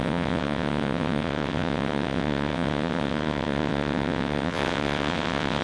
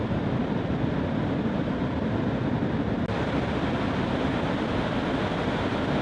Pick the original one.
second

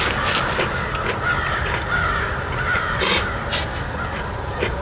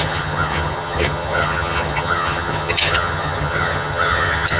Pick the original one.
first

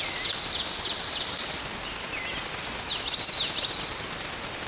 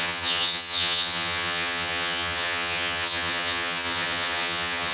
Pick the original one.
first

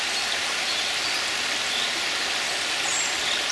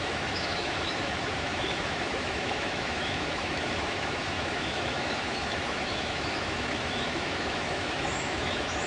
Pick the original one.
first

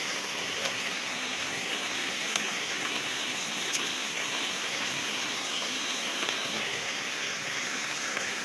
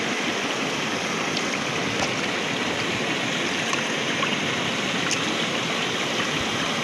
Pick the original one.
second